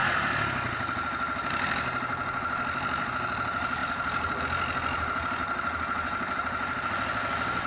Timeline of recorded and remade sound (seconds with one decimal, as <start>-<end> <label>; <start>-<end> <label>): 0.0-7.7 recorded